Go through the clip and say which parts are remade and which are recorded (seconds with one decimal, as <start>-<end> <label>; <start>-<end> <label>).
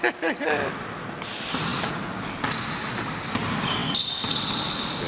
0.0-5.1 recorded